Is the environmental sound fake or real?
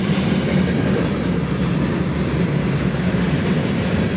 real